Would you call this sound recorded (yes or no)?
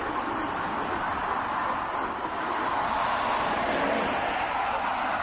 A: yes